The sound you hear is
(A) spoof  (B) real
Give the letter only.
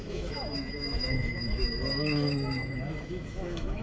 A